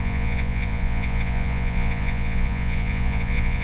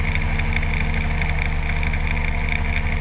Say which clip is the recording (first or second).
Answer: second